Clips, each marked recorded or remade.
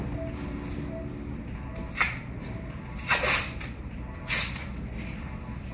recorded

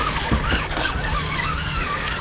remade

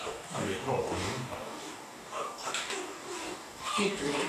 remade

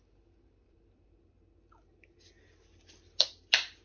recorded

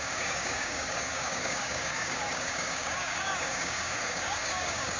remade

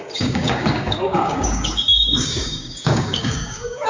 remade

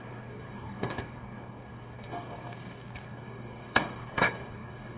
remade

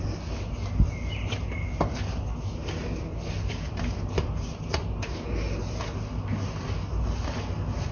recorded